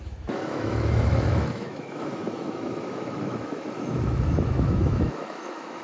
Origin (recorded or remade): remade